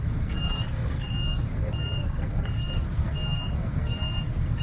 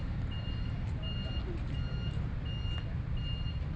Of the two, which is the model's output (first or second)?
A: first